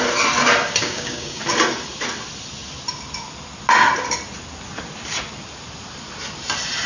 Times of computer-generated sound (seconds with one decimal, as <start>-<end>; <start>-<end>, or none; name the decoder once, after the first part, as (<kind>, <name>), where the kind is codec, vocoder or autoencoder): 0.8-1.4 (codec, DAC)